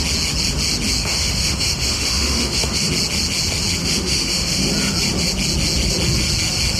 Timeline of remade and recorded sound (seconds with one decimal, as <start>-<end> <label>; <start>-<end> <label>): 0.0-1.0 recorded; 1.0-2.9 remade; 2.9-3.8 recorded; 3.8-4.7 remade; 4.7-6.8 recorded